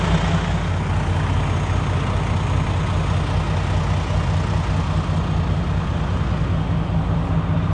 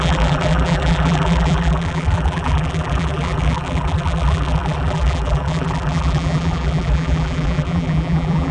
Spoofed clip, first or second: second